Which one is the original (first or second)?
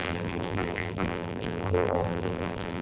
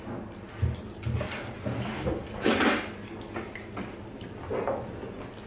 second